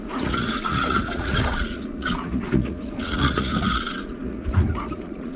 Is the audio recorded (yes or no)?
no